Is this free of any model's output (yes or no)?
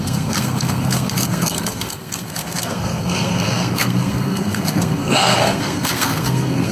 no